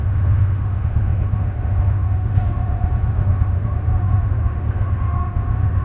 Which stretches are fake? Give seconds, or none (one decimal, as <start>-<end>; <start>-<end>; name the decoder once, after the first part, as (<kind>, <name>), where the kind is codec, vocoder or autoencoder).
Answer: 0.0-5.8 (autoencoder, DAC-VAE)